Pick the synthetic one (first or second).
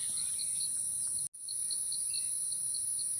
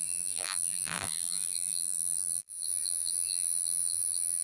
second